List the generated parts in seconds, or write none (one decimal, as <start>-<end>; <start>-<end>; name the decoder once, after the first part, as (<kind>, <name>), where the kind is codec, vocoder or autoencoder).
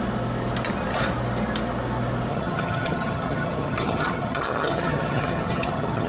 2.3-6.1 (vocoder, HiFi-GAN)